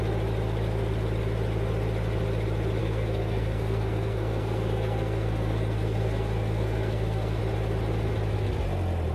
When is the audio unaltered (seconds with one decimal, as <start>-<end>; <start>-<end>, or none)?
0.0-2.8; 7.4-9.1